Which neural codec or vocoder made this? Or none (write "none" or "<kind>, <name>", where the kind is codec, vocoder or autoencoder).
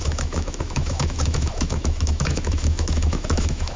autoencoder, DAC-VAE